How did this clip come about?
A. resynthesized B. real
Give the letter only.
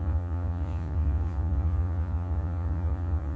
A